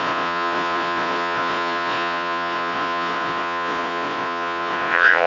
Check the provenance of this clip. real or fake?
fake